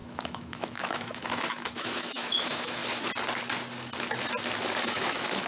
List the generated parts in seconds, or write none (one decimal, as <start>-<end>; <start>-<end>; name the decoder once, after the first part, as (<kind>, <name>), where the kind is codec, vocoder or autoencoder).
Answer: 0.0-2.8 (autoencoder, DAC-VAE); 4.8-5.5

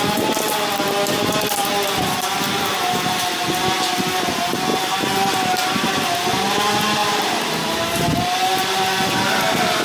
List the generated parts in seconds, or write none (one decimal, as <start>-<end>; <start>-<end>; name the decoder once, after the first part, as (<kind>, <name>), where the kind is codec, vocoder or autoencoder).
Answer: 1.6-3.3 (vocoder, BigVGAN v2); 4.7-5.3; 7.0-9.3

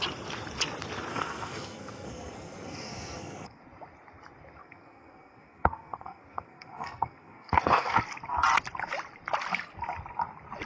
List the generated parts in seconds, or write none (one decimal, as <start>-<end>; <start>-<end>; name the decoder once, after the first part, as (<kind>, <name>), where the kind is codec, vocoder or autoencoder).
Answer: 1.1-3.6 (codec, SNAC); 4.6-8.0

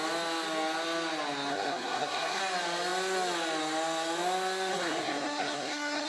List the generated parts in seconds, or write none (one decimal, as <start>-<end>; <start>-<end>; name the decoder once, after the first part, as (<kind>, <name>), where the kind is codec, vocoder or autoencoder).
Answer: 1.5-2.4 (codec, SNAC); 4.7-6.1

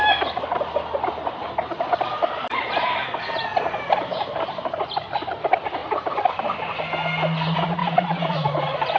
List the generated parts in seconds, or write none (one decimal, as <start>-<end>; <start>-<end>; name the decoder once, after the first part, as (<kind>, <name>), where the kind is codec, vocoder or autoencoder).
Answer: 3.5-4.4 (vocoder, BigVGAN v2); 5.8-6.4; 7.8-9.0

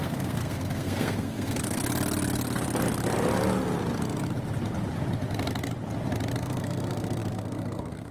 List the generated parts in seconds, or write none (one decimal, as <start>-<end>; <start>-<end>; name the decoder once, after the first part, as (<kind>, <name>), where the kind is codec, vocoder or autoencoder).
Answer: 0.0-1.8 (codec, SNAC); 6.4-8.1

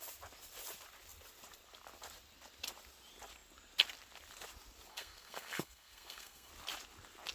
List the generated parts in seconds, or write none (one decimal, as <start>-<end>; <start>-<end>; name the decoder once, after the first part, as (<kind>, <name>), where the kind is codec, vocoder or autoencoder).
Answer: 4.9-6.5 (codec, SNAC)

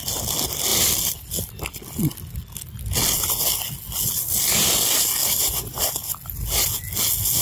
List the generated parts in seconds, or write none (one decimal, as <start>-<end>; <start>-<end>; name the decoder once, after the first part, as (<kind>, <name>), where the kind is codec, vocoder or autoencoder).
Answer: 0.7-1.3 (vocoder, BigVGAN v2); 5.2-5.8